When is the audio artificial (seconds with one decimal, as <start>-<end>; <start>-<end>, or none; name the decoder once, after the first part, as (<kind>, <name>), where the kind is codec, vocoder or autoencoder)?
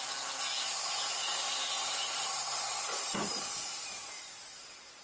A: 1.2-4.2 (vocoder, BigVGAN v2)